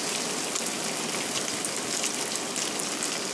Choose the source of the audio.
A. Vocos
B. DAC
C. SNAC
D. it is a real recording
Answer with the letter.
D